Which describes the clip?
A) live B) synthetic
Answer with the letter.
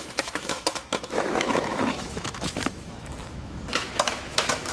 B